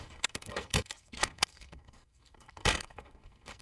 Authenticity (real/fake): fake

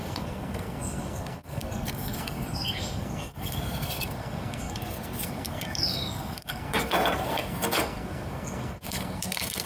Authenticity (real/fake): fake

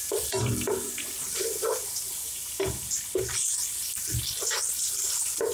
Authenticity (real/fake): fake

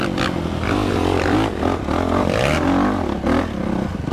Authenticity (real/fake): real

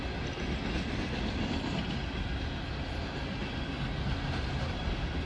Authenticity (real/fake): real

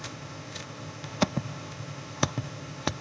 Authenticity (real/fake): fake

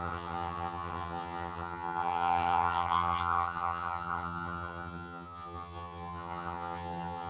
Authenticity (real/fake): fake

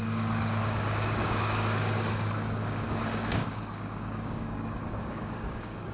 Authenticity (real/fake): fake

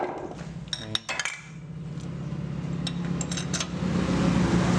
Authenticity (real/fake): real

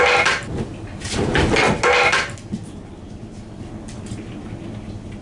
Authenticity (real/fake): real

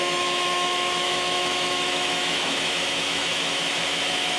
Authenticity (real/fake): fake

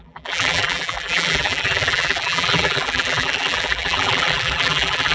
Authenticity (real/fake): fake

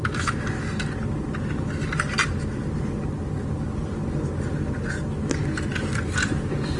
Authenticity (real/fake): real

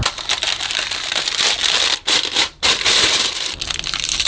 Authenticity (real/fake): fake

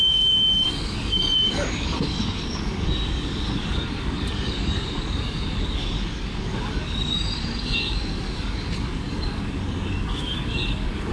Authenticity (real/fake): fake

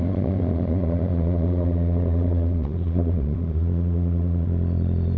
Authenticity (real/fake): fake